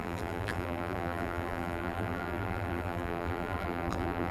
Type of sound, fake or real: fake